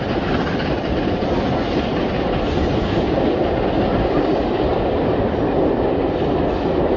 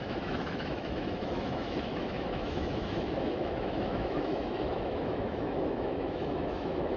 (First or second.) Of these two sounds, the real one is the first